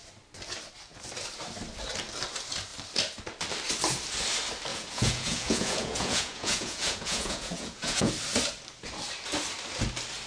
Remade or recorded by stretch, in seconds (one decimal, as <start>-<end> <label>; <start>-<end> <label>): 0.0-4.7 recorded; 4.7-8.1 remade; 8.1-10.3 recorded